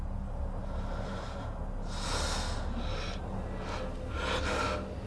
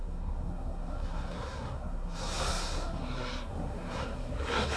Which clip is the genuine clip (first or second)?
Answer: first